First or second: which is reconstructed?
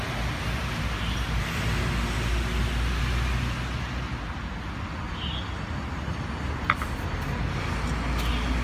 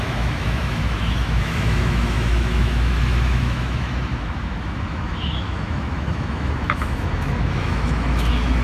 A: second